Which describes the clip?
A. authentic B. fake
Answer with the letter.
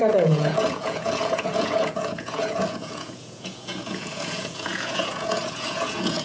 B